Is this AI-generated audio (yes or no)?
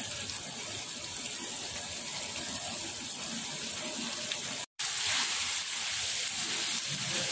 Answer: no